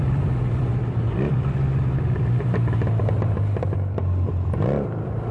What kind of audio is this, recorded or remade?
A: remade